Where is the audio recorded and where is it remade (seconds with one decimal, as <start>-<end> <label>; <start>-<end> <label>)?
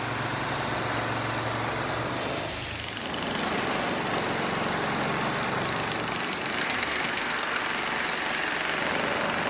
0.0-6.6 recorded; 6.6-7.6 remade; 7.6-9.5 recorded